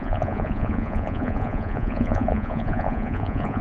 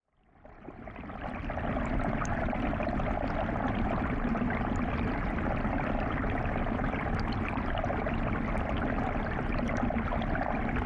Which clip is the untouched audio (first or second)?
second